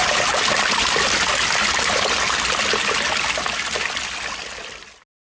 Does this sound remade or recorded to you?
recorded